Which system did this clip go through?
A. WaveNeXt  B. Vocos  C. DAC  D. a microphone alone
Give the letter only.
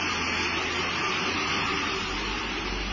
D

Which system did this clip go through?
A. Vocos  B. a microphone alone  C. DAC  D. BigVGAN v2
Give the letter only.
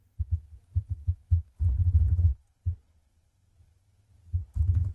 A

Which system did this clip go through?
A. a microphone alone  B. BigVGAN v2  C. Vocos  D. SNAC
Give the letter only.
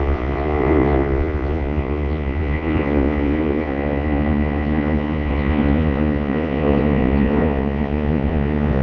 C